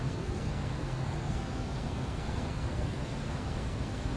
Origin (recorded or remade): remade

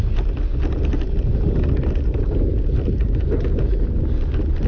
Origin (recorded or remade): recorded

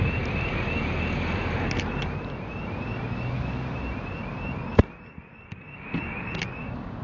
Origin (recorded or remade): recorded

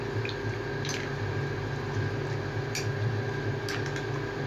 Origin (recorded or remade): recorded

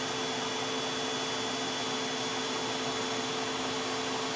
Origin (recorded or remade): recorded